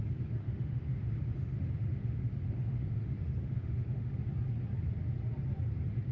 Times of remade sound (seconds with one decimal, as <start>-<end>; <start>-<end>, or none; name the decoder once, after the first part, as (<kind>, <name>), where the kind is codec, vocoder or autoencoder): 0.4-4.1 (autoencoder, DAC-VAE)